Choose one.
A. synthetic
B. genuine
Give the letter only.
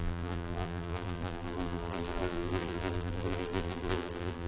A